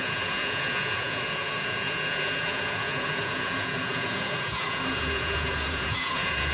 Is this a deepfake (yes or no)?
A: yes